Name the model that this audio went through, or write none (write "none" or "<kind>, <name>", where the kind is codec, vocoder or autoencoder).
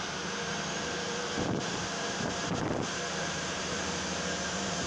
vocoder, BigVGAN v2